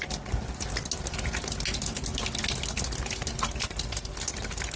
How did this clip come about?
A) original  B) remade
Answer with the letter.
A